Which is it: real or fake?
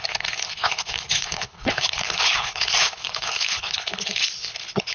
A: fake